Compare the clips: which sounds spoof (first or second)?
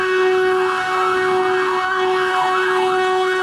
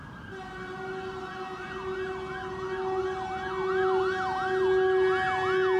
first